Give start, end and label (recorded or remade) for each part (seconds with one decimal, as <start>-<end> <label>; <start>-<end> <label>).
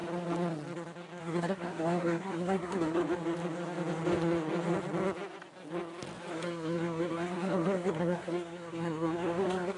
0.0-1.2 recorded; 1.2-3.0 remade; 3.0-6.3 recorded; 6.3-9.8 remade